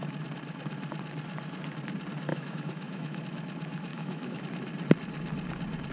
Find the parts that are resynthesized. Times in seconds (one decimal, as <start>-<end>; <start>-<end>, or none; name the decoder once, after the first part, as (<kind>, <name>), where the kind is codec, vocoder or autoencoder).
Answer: 2.3-3.2 (autoencoder, DAC-VAE); 3.9-4.4

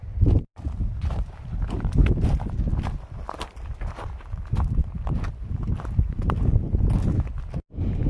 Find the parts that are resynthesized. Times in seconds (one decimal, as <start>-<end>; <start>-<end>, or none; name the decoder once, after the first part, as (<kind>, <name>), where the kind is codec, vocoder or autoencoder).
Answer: none